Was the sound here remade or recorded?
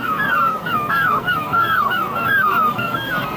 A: remade